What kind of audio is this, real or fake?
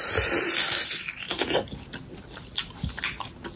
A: real